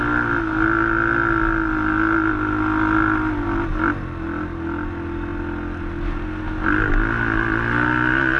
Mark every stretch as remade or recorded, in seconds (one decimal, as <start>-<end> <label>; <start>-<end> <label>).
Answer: 0.0-8.4 recorded